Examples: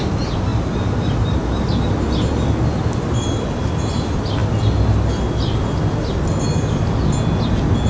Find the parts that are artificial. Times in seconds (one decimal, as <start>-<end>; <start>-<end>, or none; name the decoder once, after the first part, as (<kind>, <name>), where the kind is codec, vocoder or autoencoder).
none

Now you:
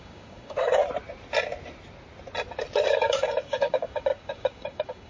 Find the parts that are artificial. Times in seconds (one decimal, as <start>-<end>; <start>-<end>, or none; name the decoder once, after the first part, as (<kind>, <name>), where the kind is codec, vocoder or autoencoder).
0.0-0.8 (codec, DAC); 2.9-5.1

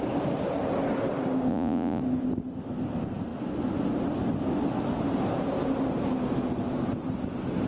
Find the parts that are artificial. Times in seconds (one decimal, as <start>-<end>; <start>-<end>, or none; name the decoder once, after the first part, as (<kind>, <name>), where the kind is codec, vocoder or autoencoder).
1.5-2.0 (vocoder, Vocos)